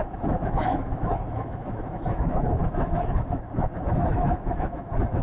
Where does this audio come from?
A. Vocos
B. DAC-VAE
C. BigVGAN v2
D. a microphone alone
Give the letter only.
B